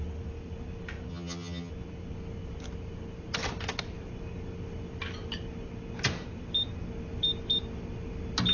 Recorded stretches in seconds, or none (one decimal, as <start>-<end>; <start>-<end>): 0.0-1.1; 1.7-8.5